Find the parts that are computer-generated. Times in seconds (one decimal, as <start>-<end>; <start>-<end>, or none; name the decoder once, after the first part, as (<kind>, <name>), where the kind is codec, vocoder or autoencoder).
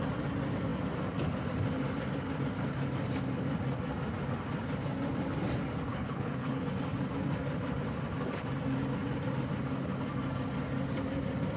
5.9-6.7 (codec, HILCodec)